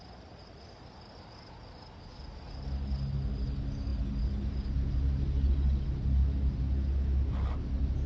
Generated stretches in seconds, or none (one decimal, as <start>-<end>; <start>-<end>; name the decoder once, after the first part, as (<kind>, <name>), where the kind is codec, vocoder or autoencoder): none